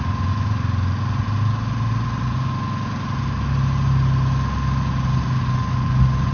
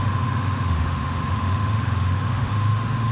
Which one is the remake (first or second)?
second